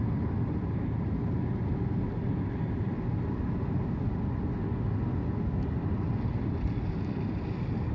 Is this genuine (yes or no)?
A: yes